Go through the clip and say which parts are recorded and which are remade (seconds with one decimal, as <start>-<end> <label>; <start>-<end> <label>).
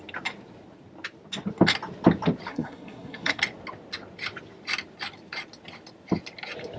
0.0-2.5 recorded; 2.5-3.4 remade; 3.4-6.8 recorded